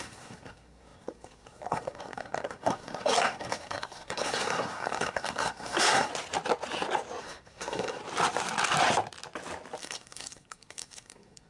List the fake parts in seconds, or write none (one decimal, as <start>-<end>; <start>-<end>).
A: 0.0-6.1; 7.2-8.0; 9.8-11.5